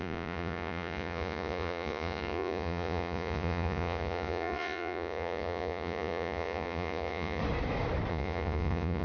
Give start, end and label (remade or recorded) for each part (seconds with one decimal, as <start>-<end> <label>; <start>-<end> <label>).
0.0-7.4 remade; 7.4-8.1 recorded; 8.1-9.0 remade